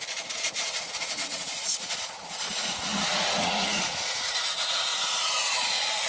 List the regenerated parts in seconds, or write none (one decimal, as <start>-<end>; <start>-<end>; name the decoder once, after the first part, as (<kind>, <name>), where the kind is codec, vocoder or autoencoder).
0.0-4.9 (vocoder, Vocos); 5.6-6.1